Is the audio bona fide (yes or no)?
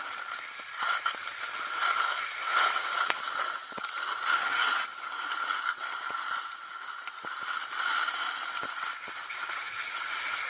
yes